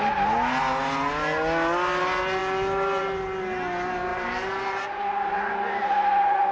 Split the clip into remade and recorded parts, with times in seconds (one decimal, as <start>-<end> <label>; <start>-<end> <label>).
0.0-4.1 recorded; 4.1-5.0 remade; 5.0-6.5 recorded

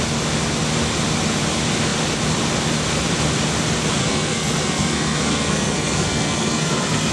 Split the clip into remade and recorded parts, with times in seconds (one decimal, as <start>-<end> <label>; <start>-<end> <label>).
0.0-4.0 recorded; 4.0-7.1 remade

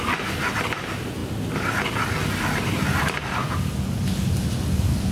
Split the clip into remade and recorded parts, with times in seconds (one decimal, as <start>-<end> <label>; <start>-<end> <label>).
0.0-5.1 recorded

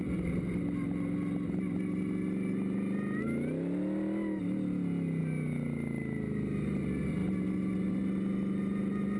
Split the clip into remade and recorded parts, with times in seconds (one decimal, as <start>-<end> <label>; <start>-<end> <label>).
0.0-9.2 recorded

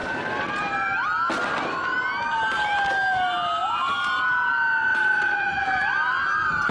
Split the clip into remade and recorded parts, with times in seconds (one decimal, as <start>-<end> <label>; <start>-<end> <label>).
0.0-4.9 recorded; 4.9-5.8 remade; 5.8-6.7 recorded